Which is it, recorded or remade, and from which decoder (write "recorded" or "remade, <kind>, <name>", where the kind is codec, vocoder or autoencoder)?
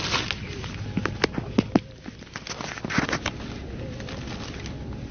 recorded